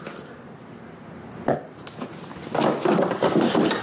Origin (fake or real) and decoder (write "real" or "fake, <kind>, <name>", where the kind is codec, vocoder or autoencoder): real